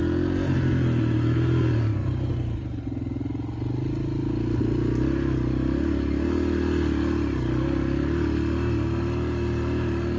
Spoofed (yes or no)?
no